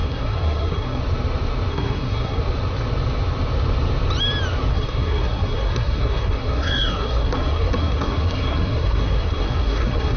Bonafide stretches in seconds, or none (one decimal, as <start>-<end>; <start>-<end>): 1.0-1.7; 2.4-4.7